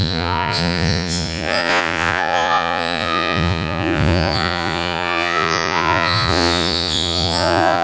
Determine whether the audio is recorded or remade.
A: remade